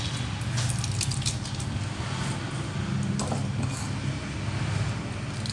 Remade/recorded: recorded